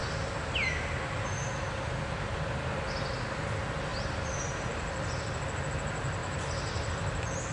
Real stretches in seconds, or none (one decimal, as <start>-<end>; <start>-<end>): 0.0-7.5